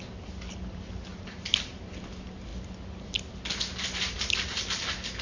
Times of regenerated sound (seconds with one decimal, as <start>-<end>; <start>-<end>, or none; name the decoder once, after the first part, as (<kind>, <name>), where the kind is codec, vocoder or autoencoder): 1.1-1.7 (vocoder, BigVGAN v2)